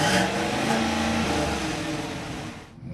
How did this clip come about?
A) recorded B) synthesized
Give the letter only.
A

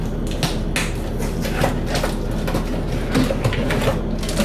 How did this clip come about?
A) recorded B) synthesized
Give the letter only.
A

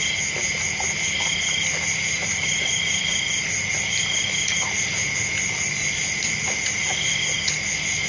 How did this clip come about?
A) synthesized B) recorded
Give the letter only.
B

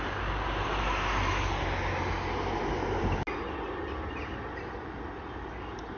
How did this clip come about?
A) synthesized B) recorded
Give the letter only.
B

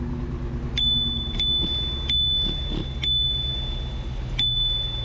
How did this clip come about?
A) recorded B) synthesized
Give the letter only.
A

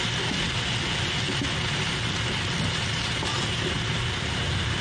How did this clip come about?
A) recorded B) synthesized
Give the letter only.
A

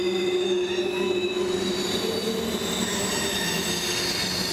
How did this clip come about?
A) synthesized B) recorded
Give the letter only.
B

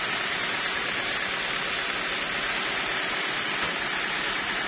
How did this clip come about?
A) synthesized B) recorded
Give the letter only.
B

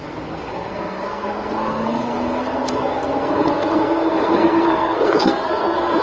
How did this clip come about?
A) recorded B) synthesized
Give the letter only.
B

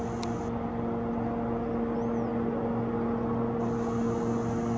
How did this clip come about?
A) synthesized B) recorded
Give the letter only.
B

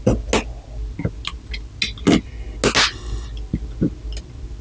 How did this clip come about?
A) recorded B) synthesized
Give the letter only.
A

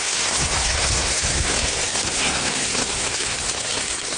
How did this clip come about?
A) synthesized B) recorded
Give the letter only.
A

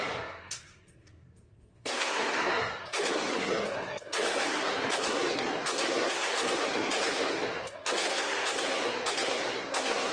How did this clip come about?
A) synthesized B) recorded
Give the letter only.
A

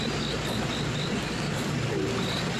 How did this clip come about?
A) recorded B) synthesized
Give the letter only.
A